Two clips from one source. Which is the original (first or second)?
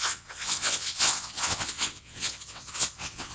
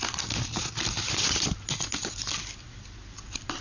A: second